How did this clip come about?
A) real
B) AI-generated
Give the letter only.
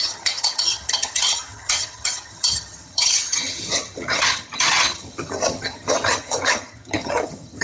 B